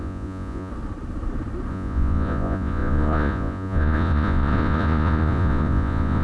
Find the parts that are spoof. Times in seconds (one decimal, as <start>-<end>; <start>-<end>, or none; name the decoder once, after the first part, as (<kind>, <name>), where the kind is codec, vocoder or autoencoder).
0.0-0.7 (vocoder, Vocos); 1.7-6.2